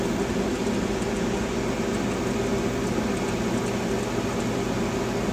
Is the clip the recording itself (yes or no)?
yes